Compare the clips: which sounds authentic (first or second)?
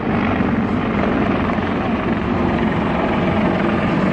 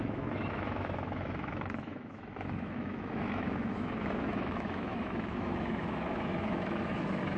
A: first